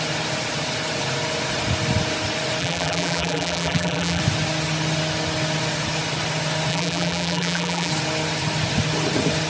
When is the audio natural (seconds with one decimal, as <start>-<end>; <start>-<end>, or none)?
0.0-2.6; 4.2-6.7; 7.9-9.5